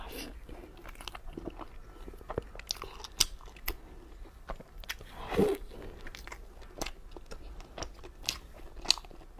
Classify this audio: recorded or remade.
recorded